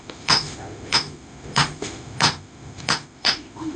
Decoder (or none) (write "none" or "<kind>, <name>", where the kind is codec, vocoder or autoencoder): autoencoder, DAC-VAE